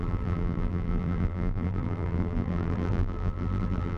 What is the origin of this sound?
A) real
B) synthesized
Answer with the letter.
B